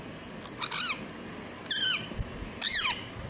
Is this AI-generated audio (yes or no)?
no